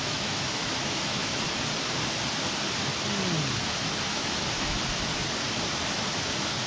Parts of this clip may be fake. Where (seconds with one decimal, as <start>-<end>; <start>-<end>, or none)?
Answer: 0.0-1.3; 3.8-5.1

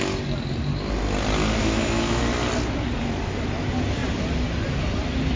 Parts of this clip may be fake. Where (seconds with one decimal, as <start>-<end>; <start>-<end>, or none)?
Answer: 1.6-2.2

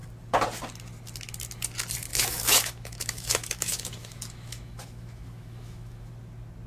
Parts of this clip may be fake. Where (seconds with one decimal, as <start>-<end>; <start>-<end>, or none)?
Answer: 2.1-6.1

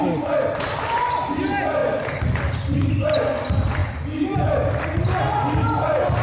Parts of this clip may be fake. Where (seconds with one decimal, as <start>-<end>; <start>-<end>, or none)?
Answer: none